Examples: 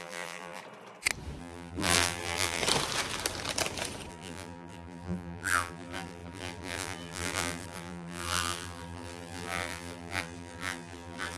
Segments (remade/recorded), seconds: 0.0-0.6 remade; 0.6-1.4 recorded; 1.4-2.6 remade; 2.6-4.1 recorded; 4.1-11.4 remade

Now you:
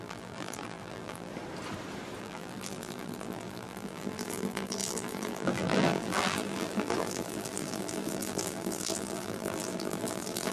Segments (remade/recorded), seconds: 0.0-1.3 remade; 1.3-2.2 recorded; 2.2-10.5 remade

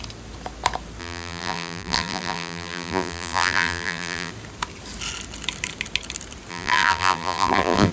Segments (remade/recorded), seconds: 0.0-1.0 recorded; 1.0-4.3 remade; 4.3-6.5 recorded; 6.5-7.9 remade